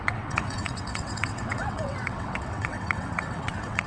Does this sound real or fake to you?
fake